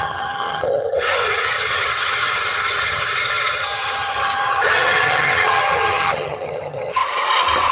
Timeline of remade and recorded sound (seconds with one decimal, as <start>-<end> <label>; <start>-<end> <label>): 0.0-7.0 remade; 7.0-7.7 recorded